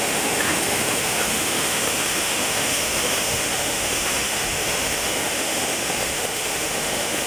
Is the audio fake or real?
fake